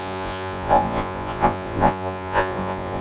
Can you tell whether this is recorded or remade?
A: remade